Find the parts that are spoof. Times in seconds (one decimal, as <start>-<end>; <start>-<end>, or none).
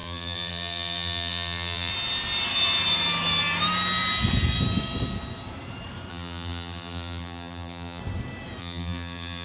0.0-1.9; 6.1-8.0; 8.6-9.4